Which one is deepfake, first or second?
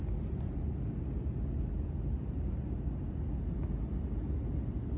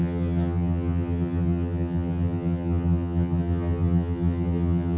second